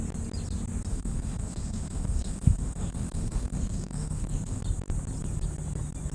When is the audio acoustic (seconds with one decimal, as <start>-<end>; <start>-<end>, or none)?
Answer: 0.0-0.9; 4.6-6.1